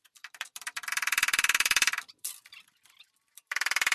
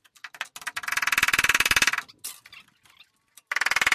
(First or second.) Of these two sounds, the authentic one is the second